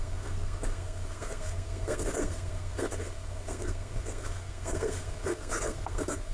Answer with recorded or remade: remade